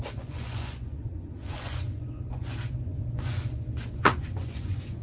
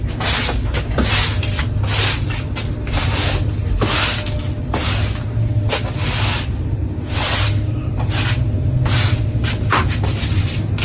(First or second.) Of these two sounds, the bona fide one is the second